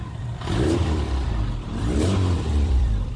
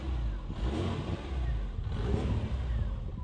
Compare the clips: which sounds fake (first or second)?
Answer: first